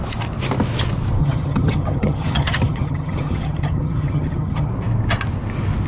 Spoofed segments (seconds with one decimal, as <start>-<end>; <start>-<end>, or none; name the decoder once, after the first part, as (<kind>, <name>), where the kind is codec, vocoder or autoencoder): 1.2-4.7 (vocoder, HiFi-GAN)